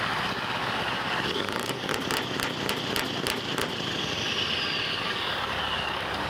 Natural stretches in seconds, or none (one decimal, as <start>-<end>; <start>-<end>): 1.9-4.9